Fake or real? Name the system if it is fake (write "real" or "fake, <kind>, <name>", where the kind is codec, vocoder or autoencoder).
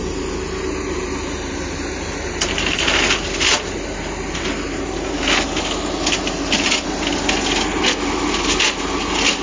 real